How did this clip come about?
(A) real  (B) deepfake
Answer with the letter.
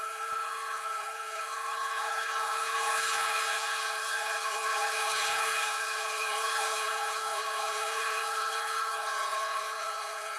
B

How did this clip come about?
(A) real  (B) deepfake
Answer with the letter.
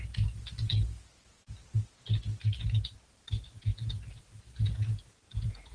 A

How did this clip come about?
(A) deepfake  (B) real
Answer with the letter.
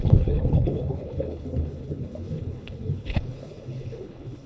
A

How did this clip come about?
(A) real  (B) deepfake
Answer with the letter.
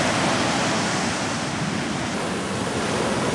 A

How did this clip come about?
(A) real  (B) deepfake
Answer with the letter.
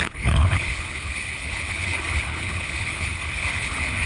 B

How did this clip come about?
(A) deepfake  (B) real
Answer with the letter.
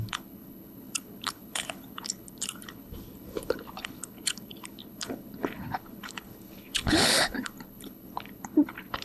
A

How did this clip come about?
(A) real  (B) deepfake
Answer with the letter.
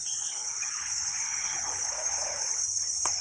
B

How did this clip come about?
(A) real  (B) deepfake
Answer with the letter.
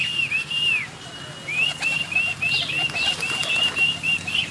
A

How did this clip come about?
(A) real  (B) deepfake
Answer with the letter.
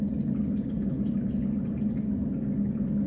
A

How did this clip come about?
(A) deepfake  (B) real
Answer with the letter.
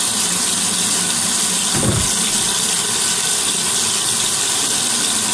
B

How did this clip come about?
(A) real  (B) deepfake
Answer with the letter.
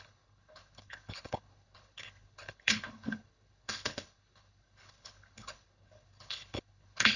B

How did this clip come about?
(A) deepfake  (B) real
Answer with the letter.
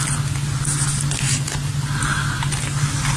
B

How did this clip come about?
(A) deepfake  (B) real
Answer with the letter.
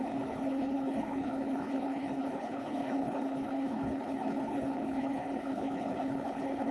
A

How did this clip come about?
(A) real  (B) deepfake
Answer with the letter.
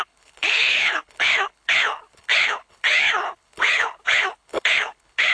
B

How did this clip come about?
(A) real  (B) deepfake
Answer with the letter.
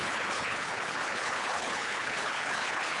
B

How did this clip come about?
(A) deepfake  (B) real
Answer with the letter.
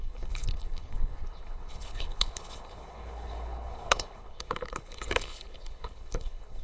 A